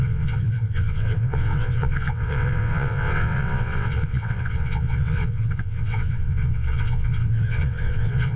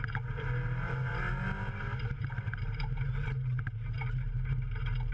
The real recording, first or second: second